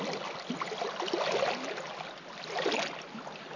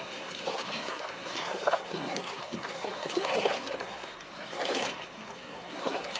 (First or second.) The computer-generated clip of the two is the second